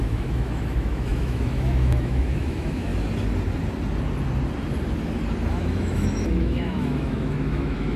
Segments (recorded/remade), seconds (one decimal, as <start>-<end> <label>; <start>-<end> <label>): 0.0-2.9 remade; 2.9-5.5 recorded; 5.5-8.0 remade